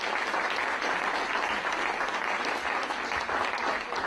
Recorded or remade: recorded